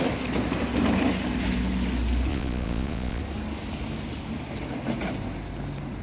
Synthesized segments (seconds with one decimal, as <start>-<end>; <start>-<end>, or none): 2.3-3.2